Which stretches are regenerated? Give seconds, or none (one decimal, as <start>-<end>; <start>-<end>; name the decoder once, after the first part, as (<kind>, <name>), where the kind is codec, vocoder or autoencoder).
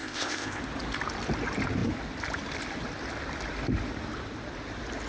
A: 0.0-0.6 (codec, ZipCodec)